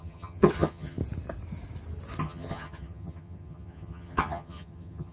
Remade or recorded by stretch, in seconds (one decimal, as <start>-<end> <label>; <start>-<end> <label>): 0.0-1.0 remade; 1.0-2.2 recorded; 2.2-5.1 remade